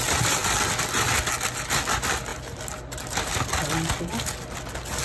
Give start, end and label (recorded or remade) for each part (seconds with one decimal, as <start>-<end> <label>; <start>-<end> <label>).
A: 0.0-5.0 recorded